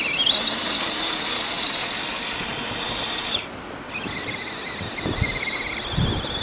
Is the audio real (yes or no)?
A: yes